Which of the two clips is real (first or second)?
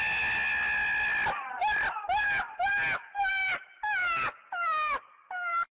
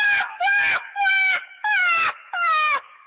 first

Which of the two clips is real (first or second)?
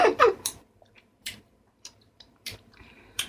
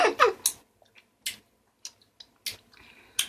second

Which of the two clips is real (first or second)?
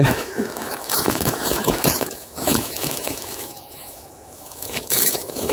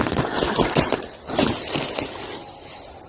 second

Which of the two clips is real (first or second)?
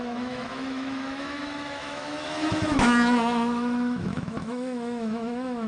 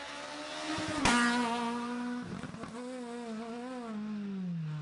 second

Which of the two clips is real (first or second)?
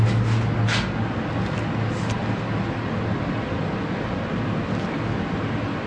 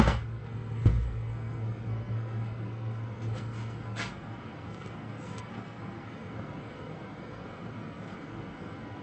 first